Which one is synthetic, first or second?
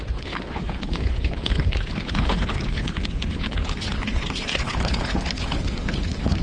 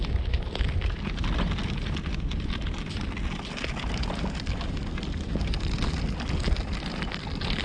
first